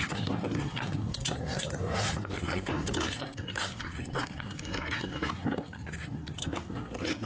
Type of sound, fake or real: fake